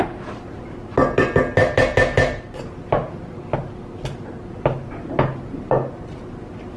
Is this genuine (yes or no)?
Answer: yes